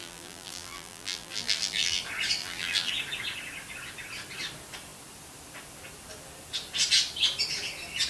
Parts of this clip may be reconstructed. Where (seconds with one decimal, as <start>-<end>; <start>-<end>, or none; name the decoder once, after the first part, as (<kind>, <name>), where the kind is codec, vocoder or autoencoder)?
0.0-2.0 (vocoder, BigVGAN v2); 2.4-2.9